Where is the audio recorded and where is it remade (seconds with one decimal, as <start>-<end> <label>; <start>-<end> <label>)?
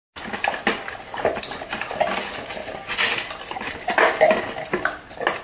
0.0-2.6 recorded; 2.6-4.2 remade; 4.2-5.4 recorded